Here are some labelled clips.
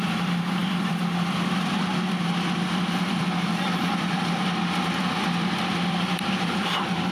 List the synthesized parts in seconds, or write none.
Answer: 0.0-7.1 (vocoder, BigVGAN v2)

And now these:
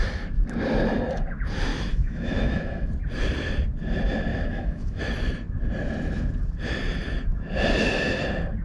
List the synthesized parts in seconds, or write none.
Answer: 1.7-2.9 (autoencoder, DAC-VAE); 4.3-5.0